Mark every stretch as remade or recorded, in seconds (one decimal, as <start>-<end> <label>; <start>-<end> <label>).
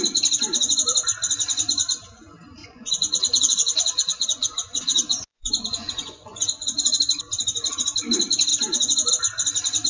0.0-2.6 recorded; 2.6-7.0 remade; 7.0-9.9 recorded